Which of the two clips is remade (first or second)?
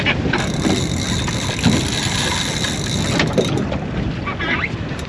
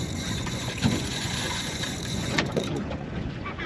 second